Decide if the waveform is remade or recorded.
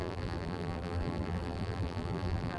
remade